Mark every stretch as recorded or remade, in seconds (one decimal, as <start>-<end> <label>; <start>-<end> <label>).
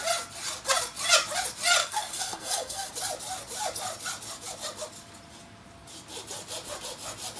0.0-1.8 recorded; 1.8-2.9 remade; 2.9-7.4 recorded